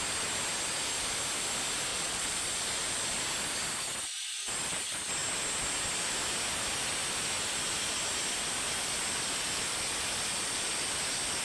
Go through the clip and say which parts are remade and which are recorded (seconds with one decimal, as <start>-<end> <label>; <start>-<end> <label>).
0.0-1.9 recorded; 1.9-2.4 remade; 2.4-11.4 recorded